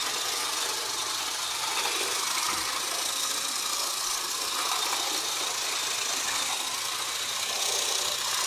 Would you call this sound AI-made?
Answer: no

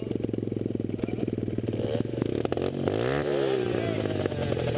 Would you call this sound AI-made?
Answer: no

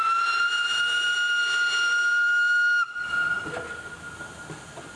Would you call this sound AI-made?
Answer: no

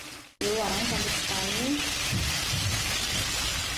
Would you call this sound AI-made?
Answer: no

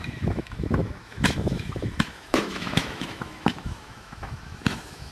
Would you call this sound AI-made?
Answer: yes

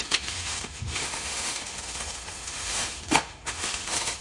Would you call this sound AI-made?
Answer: yes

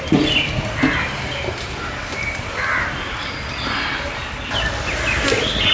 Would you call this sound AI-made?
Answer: no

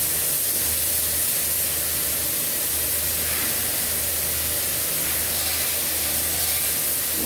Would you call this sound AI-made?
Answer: no